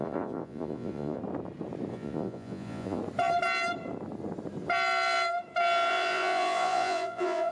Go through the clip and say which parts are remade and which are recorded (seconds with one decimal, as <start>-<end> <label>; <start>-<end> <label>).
0.0-1.2 remade; 1.2-1.9 recorded; 1.9-3.0 remade; 3.0-5.9 recorded; 5.9-7.5 remade